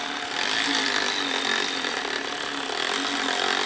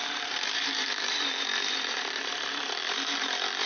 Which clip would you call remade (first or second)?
second